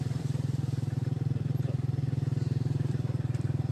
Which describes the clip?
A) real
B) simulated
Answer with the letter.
B